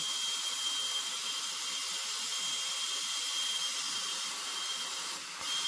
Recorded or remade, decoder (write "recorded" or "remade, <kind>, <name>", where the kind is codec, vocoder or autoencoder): recorded